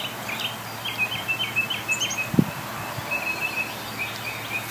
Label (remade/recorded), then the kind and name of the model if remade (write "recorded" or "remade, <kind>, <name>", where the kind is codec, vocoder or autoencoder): recorded